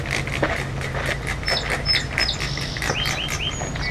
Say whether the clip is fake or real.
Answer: real